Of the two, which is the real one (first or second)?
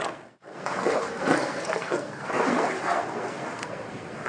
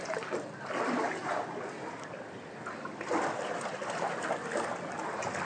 second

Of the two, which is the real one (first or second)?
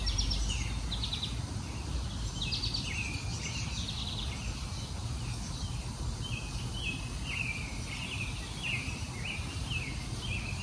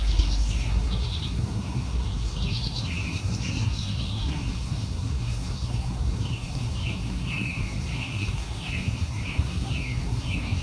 first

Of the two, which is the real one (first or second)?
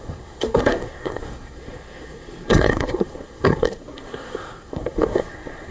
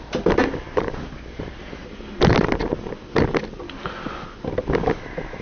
second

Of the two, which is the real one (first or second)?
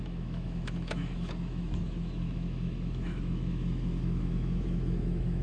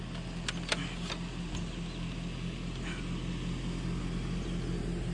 second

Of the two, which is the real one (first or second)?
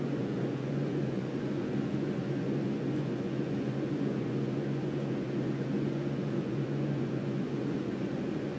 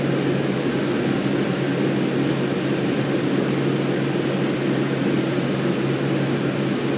second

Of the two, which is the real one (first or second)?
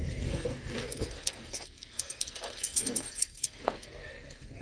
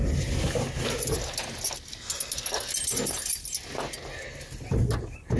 second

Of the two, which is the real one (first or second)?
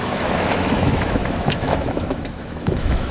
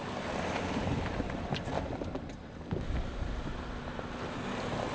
second